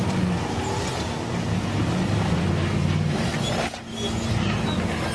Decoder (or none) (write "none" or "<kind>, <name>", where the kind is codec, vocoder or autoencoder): none